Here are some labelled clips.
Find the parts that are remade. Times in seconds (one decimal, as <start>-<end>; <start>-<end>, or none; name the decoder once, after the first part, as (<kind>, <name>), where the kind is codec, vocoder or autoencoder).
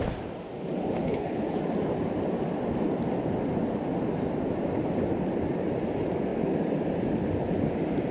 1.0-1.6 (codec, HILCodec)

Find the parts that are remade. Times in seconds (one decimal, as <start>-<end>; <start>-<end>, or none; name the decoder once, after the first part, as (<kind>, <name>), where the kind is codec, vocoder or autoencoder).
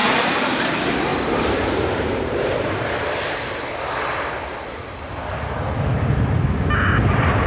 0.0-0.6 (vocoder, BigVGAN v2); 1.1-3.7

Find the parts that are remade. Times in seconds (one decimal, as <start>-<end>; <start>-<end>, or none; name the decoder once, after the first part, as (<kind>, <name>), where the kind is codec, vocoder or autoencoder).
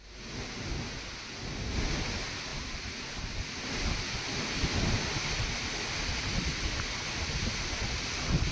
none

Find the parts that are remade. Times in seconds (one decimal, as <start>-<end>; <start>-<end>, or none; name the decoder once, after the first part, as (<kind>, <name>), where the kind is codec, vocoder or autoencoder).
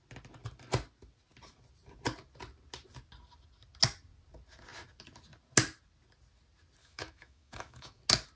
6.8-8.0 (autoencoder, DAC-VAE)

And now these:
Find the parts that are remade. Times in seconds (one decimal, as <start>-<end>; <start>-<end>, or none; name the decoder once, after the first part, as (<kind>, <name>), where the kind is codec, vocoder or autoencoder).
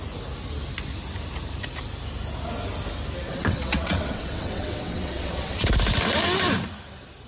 3.3-5.7 (vocoder, WaveNeXt)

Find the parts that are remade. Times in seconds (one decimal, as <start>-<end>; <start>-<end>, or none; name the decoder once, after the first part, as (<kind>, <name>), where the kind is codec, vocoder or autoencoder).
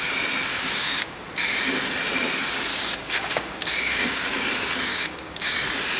0.5-1.3 (codec, DAC); 2.7-4.5; 4.9-5.6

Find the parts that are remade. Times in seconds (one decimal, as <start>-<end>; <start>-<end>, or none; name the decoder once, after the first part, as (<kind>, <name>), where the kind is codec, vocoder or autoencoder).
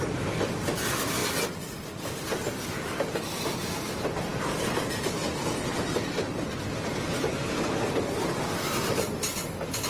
none